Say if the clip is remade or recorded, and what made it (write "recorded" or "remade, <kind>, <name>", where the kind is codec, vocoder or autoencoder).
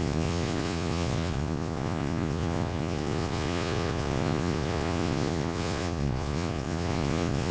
remade, vocoder, Vocos